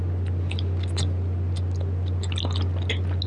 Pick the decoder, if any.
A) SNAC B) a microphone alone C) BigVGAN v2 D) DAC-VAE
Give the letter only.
B